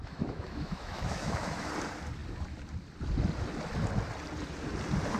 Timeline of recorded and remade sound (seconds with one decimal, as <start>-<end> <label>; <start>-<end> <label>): 0.0-1.7 remade; 1.7-5.2 recorded